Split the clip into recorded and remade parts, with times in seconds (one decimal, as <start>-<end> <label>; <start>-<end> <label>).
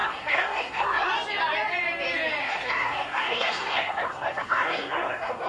0.0-1.1 remade; 1.1-2.4 recorded; 2.4-5.5 remade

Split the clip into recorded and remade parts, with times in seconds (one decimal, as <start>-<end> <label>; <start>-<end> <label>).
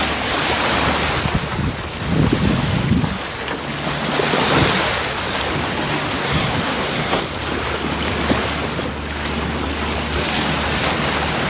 0.0-6.2 recorded; 6.2-7.2 remade; 7.2-11.5 recorded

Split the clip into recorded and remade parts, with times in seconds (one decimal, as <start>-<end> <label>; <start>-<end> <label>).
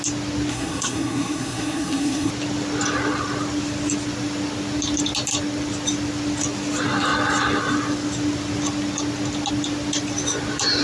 0.0-0.5 recorded; 0.5-2.3 remade; 2.3-10.8 recorded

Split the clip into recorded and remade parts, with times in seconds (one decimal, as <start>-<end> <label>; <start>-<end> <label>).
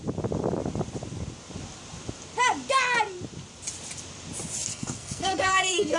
0.0-4.7 recorded; 4.7-6.0 remade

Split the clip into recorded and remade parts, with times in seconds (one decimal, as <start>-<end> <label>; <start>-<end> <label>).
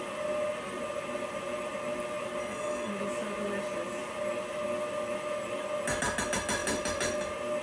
0.0-2.4 recorded; 2.4-2.9 remade; 2.9-7.6 recorded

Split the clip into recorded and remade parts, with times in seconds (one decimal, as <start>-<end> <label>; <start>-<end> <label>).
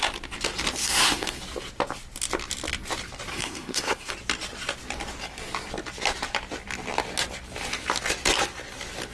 0.0-0.8 recorded; 0.8-1.4 remade; 1.4-3.3 recorded; 3.3-4.1 remade; 4.1-9.1 recorded